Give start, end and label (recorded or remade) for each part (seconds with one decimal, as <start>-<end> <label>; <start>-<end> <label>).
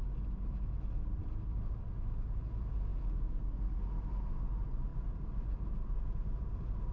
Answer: 0.0-6.9 recorded